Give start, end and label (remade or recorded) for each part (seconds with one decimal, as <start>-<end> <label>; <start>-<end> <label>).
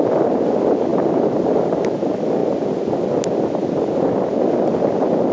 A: 0.0-5.3 recorded